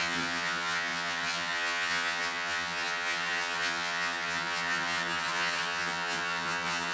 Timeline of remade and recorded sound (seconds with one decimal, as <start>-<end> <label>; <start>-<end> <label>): 0.0-6.9 remade